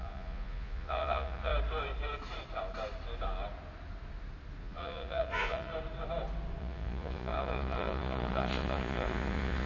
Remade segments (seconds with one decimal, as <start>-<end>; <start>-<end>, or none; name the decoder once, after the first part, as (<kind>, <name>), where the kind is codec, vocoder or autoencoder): 0.0-1.5 (vocoder, Vocos); 4.6-5.7; 6.6-9.7